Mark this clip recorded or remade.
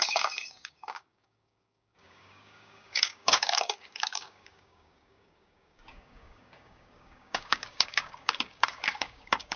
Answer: remade